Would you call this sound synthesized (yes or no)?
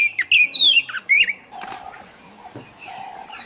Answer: no